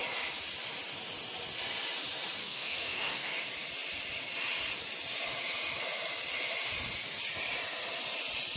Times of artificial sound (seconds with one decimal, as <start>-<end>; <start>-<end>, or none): 2.4-3.3